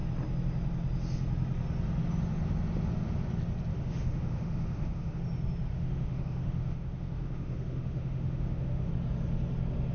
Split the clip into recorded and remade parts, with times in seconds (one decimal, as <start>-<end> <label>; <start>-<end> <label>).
0.0-3.7 recorded; 3.7-5.2 remade; 5.2-5.7 recorded; 5.7-8.9 remade; 8.9-9.9 recorded